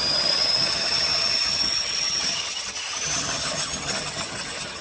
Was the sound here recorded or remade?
remade